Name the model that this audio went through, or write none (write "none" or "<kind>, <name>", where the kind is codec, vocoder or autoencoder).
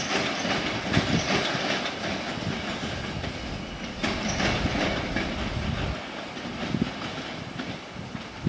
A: none